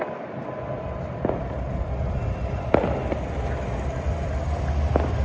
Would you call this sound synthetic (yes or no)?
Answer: no